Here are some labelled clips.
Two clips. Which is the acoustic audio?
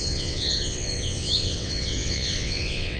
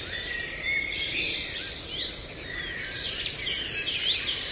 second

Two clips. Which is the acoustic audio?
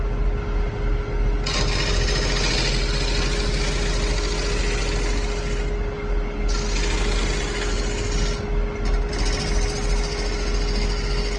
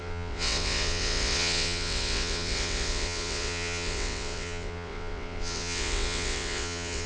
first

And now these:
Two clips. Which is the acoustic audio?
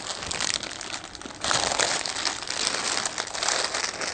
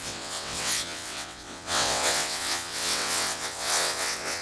first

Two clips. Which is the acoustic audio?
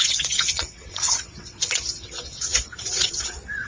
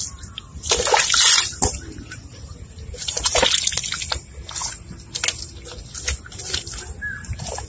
second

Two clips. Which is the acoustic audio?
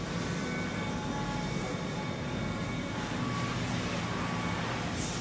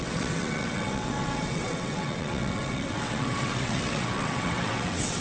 first